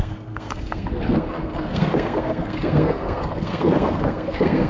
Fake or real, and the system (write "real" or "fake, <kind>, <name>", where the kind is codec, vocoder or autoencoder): fake, codec, SNAC